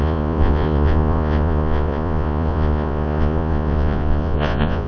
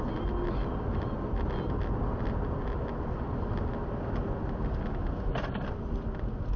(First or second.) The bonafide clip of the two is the second